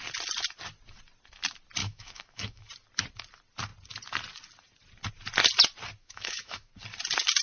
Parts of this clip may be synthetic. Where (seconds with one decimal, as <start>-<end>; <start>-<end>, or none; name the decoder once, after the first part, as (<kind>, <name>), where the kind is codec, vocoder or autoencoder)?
1.8-2.7 (autoencoder, DAC-VAE); 6.0-6.7